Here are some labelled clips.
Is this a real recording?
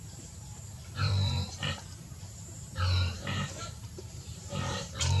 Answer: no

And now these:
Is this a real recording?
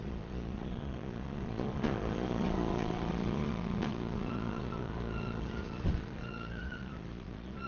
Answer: no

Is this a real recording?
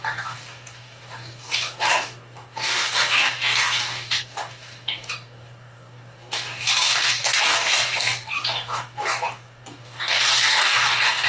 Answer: no